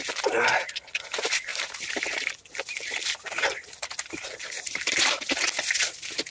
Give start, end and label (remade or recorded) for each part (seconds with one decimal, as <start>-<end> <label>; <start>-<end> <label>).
0.0-1.5 recorded; 1.5-5.3 remade; 5.3-6.3 recorded